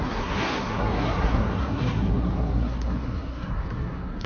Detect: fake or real fake